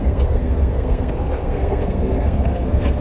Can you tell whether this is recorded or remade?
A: remade